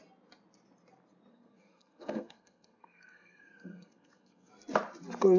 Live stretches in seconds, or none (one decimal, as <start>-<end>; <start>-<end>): 0.0-1.3; 4.5-5.4